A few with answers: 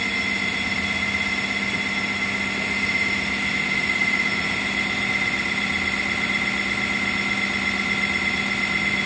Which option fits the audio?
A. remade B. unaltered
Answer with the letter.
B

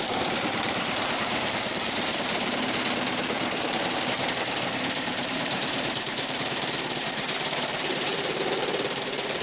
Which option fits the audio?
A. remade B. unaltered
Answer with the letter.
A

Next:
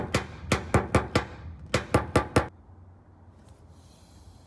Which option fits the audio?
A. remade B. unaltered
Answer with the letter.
B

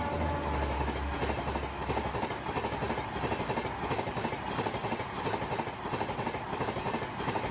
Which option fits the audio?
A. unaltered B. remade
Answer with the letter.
A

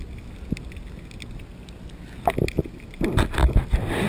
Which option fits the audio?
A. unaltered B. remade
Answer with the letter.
A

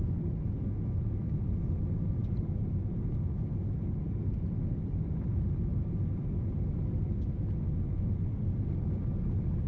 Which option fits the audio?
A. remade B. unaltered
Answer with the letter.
B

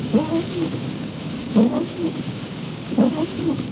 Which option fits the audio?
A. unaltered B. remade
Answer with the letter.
B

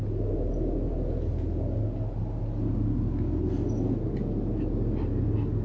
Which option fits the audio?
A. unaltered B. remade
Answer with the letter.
A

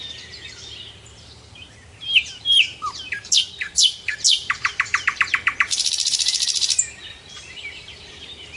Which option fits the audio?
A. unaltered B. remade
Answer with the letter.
B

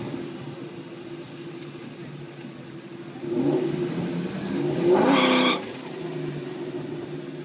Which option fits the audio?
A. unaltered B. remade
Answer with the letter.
A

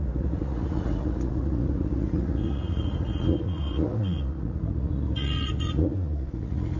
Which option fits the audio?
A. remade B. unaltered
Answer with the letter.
A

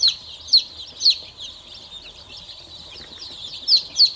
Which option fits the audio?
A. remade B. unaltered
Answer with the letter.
B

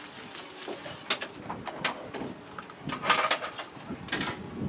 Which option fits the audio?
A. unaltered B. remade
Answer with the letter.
A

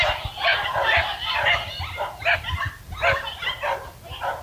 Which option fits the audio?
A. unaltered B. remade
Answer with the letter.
A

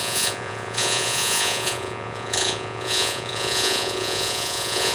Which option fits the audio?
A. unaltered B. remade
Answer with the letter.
B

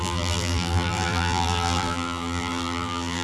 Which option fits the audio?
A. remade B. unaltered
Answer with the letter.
A